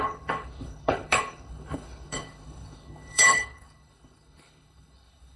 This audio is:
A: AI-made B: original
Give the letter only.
A